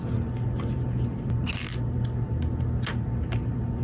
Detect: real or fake real